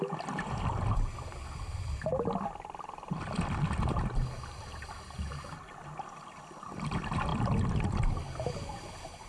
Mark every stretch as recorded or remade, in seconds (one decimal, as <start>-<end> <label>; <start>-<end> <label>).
0.0-9.3 recorded

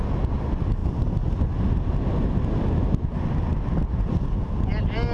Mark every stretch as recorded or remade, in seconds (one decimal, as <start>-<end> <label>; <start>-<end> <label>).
0.0-5.1 recorded

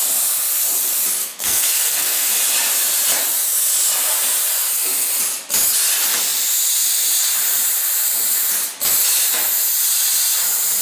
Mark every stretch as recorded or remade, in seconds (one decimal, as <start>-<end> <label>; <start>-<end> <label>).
0.0-1.2 recorded; 1.2-2.3 remade; 2.3-10.8 recorded

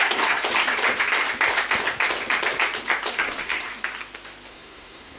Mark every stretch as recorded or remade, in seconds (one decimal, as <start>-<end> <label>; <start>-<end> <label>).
0.0-0.4 remade; 0.4-3.1 recorded; 3.1-3.7 remade; 3.7-4.5 recorded; 4.5-5.2 remade

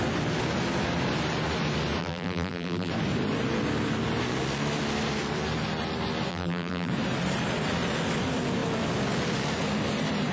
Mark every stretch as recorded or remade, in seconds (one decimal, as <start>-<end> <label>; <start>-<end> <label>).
0.0-2.0 recorded; 2.0-2.9 remade; 2.9-6.3 recorded; 6.3-6.9 remade; 6.9-10.3 recorded

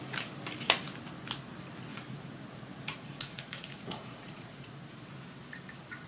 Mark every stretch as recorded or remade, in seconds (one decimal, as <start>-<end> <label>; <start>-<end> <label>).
0.0-1.9 recorded; 1.9-4.7 remade; 4.7-6.1 recorded

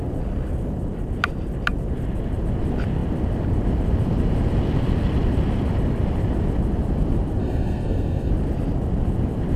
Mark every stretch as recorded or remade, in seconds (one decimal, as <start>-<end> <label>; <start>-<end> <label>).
0.0-7.4 recorded; 7.4-8.3 remade; 8.3-9.6 recorded